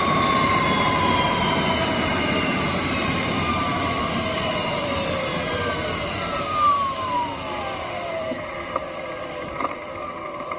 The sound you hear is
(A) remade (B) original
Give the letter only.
A